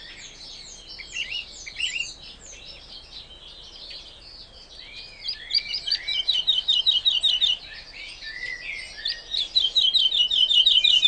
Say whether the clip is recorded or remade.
recorded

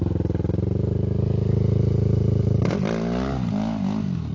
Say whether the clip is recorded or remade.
recorded